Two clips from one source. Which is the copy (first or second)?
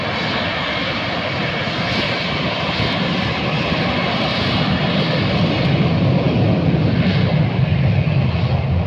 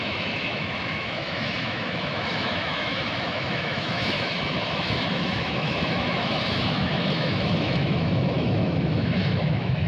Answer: second